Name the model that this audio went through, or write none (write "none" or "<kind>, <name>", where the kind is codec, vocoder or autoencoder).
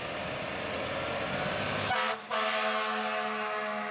none